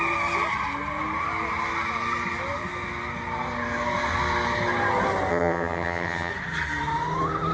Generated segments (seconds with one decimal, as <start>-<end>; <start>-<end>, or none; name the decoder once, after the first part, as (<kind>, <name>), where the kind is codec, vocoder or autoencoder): 5.3-6.3 (vocoder, HiFi-GAN)